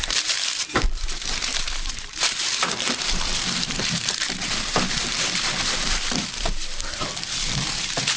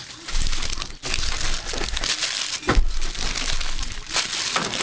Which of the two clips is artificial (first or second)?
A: first